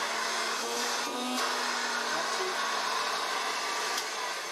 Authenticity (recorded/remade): recorded